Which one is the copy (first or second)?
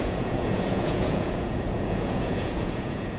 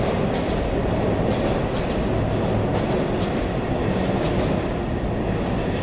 first